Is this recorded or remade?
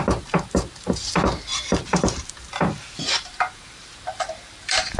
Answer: remade